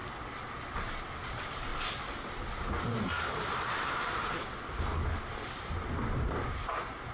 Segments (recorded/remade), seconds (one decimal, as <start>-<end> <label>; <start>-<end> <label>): 0.0-0.7 recorded; 0.7-1.7 remade; 1.7-2.6 recorded; 2.6-4.4 remade; 4.4-5.3 recorded; 5.3-7.1 remade